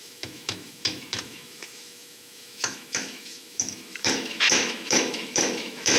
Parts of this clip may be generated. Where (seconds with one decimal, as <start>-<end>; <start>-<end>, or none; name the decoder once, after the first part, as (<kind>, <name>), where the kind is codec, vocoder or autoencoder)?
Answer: 0.0-6.0 (autoencoder, DAC-VAE)